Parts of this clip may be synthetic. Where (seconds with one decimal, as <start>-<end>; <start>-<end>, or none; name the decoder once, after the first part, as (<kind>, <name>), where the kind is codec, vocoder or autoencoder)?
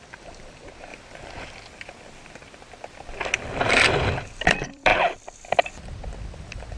0.0-0.9 (vocoder, BigVGAN v2); 3.7-4.9; 5.7-6.8